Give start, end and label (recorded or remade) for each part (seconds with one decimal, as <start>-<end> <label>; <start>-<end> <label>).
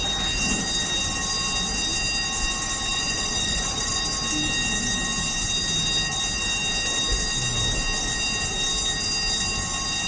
0.0-2.9 recorded; 2.9-4.0 remade; 4.0-10.1 recorded